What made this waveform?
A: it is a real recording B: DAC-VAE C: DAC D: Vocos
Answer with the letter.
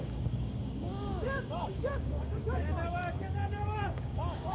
C